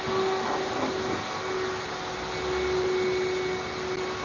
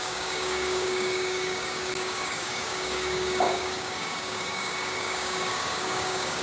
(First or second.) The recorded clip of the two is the first